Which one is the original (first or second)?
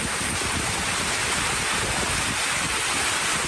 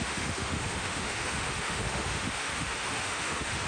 first